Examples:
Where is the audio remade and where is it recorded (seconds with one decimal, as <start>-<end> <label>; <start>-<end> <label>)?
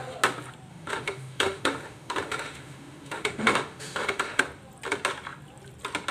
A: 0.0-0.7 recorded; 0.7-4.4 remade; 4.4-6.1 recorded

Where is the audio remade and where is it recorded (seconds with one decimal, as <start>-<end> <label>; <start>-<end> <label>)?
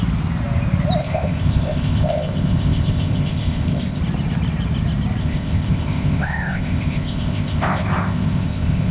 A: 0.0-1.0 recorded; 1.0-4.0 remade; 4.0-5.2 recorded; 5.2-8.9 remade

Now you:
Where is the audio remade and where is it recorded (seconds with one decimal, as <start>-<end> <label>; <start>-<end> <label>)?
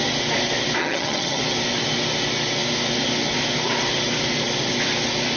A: 0.0-0.8 recorded; 0.8-1.4 remade; 1.4-5.4 recorded